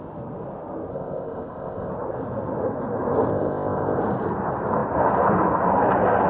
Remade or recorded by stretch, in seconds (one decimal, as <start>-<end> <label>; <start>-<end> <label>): 0.0-0.9 recorded; 0.9-1.9 remade; 1.9-3.3 recorded; 3.3-4.0 remade; 4.0-6.3 recorded